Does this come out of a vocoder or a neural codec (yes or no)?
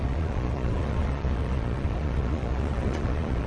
yes